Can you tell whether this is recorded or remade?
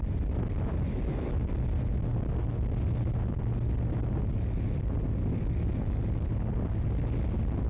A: recorded